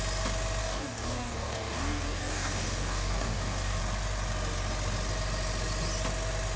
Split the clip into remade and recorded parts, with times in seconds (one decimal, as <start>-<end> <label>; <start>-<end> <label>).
0.0-0.6 recorded; 0.6-3.8 remade; 3.8-6.6 recorded